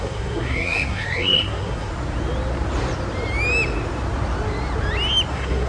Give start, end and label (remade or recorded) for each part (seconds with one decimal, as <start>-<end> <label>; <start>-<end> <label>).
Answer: 0.0-1.9 remade; 1.9-5.3 recorded; 5.3-5.7 remade